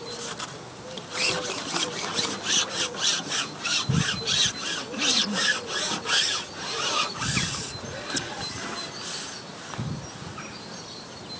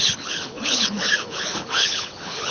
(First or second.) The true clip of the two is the first